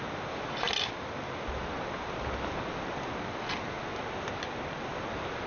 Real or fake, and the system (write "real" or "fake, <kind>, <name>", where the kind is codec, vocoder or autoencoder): real